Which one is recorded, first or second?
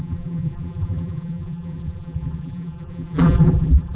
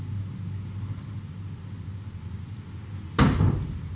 second